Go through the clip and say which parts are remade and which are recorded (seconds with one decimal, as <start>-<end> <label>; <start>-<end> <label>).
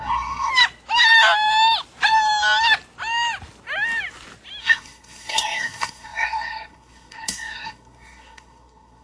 0.0-0.5 remade; 0.5-4.6 recorded; 4.6-9.0 remade